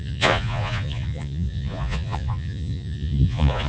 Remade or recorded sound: remade